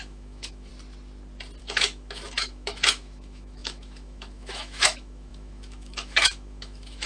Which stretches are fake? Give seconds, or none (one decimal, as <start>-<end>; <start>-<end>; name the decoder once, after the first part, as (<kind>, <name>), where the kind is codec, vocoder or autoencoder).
0.0-0.7 (autoencoder, DAC-VAE); 1.6-7.1